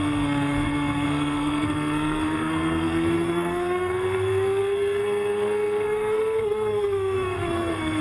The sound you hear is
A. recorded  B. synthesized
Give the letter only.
B